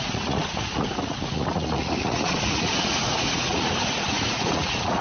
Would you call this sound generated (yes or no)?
yes